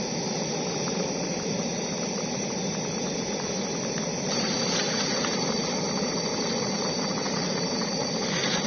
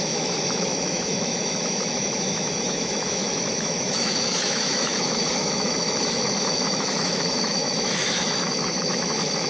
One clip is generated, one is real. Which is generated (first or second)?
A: second